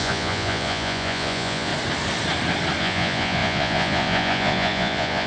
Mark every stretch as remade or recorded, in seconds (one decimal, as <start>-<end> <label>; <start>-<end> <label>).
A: 0.0-1.7 remade; 1.7-2.8 recorded; 2.8-5.3 remade